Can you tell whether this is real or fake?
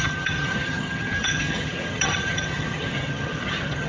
fake